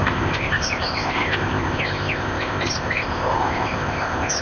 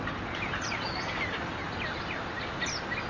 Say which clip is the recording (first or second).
second